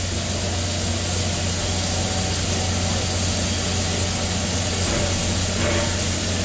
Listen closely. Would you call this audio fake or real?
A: real